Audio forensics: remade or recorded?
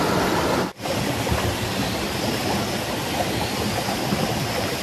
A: remade